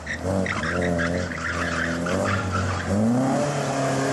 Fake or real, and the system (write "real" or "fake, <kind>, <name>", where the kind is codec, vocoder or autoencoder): real